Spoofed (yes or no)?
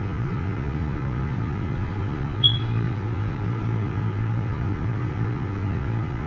yes